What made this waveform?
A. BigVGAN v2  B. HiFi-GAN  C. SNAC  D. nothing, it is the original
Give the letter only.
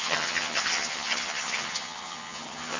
B